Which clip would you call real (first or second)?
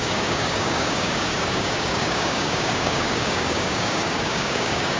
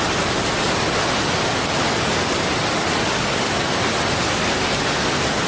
second